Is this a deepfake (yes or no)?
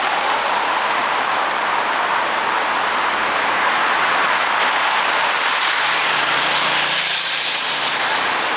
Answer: no